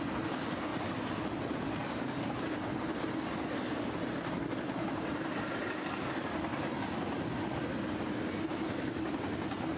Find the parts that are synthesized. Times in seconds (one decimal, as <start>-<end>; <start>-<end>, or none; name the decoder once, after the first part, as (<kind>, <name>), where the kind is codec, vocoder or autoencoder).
none